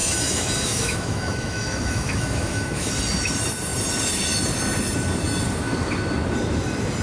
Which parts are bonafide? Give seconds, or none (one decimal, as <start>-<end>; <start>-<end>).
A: 2.9-7.0